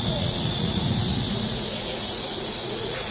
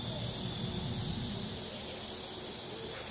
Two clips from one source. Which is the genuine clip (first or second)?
second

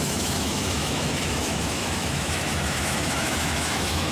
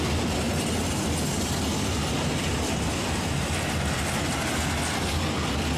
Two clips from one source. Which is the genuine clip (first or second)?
second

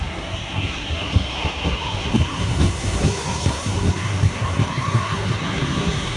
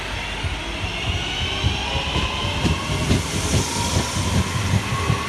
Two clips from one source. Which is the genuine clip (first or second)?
second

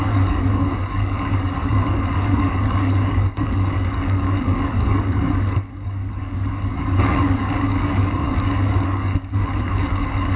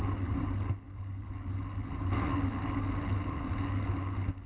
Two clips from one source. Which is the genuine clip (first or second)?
second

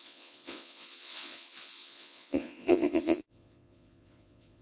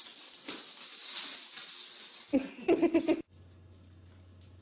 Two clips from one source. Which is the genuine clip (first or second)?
second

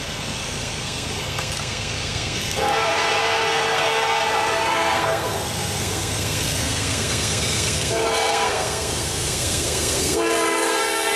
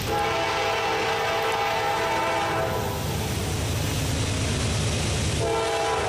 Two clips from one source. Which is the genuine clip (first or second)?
second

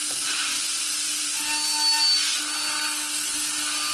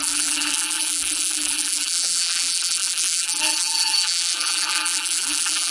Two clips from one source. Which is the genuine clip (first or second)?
first